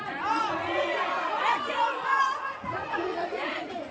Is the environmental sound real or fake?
fake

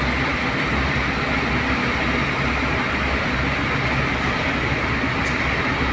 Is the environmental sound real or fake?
real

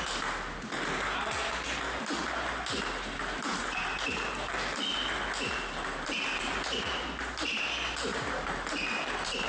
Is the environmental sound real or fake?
real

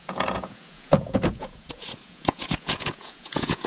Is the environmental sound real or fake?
fake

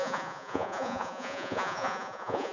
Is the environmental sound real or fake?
fake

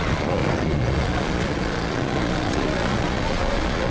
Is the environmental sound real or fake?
fake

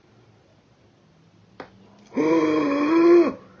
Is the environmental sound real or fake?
real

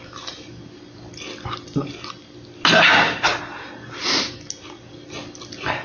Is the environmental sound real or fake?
real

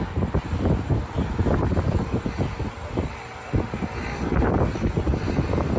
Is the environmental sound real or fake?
real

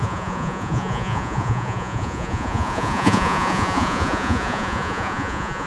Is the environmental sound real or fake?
fake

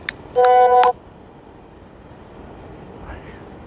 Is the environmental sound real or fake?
real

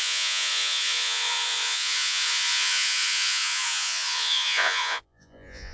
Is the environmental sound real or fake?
fake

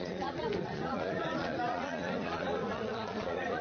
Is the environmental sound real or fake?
fake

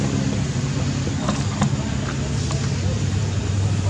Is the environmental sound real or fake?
real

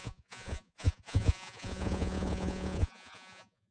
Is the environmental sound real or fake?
fake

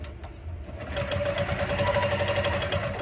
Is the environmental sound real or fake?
real